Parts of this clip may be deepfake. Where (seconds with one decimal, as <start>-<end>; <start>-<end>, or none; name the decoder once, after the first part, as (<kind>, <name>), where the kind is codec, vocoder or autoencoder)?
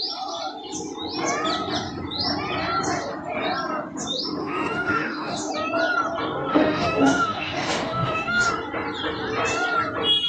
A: 4.4-5.5 (autoencoder, DAC-VAE); 6.5-8.5